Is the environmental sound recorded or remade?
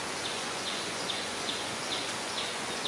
remade